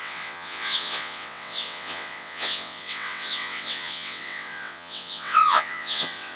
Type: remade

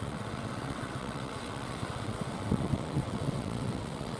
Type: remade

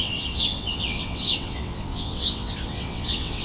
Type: remade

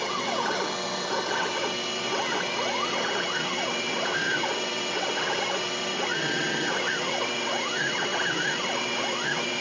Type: remade